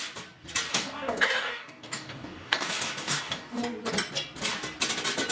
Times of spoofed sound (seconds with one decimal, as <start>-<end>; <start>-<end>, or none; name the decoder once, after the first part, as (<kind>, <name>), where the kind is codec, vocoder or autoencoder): 0.7-3.6 (codec, DAC)